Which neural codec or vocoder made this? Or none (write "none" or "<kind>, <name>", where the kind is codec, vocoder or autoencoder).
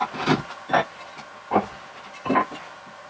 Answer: none